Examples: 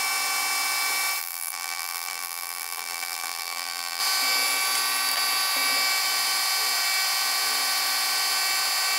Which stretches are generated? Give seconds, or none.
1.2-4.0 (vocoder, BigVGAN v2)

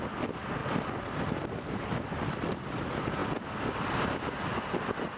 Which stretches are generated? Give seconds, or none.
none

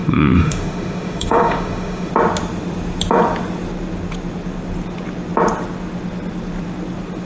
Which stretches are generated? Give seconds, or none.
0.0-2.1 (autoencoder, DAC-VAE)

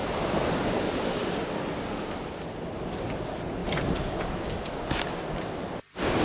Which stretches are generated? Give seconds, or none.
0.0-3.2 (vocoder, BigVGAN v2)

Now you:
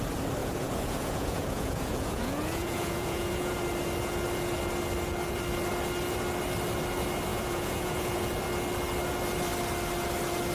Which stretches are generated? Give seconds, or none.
0.4-3.6 (vocoder, Vocos); 7.3-8.2